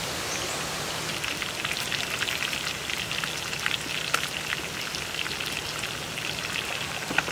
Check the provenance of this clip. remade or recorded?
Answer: recorded